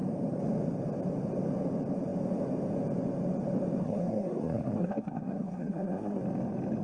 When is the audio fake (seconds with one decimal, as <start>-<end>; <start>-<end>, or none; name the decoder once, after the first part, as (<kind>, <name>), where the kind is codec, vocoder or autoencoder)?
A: 3.8-6.2 (codec, SNAC)